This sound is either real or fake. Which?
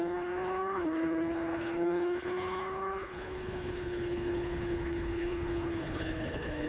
fake